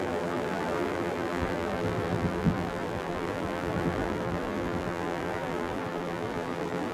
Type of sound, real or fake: fake